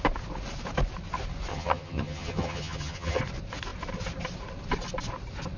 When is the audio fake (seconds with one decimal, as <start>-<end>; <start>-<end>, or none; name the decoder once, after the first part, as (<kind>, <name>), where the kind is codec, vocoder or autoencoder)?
1.5-3.2 (vocoder, HiFi-GAN)